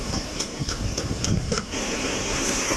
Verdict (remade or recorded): remade